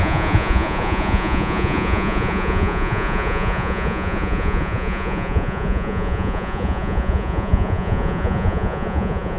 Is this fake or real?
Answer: fake